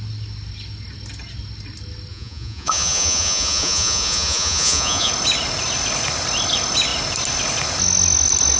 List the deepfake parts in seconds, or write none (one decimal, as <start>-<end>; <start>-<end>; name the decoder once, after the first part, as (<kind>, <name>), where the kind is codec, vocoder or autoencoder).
2.1-5.1 (vocoder, Vocos)